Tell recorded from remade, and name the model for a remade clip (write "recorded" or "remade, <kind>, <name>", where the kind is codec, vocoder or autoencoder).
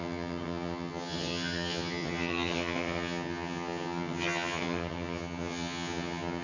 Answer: remade, vocoder, HiFi-GAN